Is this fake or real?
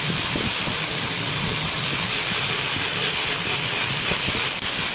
real